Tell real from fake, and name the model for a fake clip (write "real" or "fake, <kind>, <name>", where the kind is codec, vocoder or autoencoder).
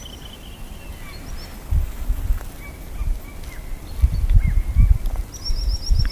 real